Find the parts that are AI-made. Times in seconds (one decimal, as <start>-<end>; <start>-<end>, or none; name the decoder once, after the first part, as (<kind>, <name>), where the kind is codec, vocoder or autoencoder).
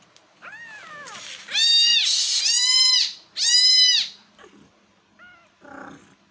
none